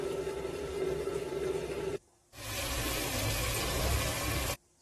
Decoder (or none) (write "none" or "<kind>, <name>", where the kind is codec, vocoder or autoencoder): none